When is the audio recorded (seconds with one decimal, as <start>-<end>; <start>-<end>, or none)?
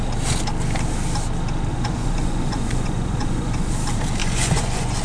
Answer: 0.0-1.7; 3.7-4.2